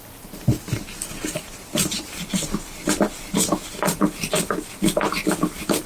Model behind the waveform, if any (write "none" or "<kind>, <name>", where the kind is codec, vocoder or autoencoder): none